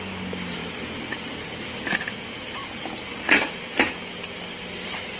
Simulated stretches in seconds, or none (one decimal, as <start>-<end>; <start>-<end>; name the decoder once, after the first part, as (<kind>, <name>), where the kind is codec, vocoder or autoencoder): none